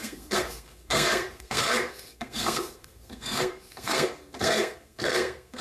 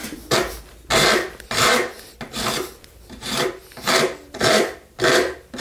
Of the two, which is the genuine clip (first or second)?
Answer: second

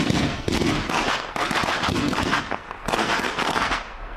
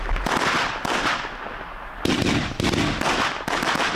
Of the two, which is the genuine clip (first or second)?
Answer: second